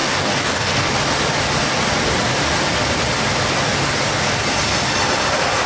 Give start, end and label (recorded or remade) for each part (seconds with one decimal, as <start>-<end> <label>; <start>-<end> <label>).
0.0-0.9 remade; 0.9-5.7 recorded